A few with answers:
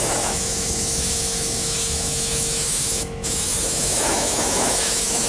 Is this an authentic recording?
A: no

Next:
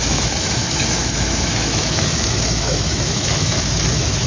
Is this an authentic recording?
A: no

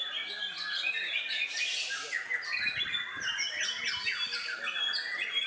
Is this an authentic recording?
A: yes